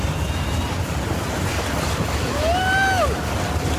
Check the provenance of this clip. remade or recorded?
recorded